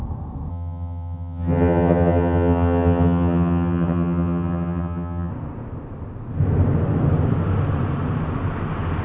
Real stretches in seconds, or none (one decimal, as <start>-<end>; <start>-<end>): 0.0-0.5; 5.3-9.0